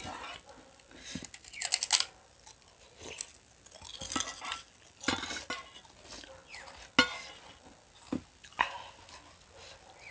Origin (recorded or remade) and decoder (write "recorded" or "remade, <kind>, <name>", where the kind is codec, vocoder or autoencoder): recorded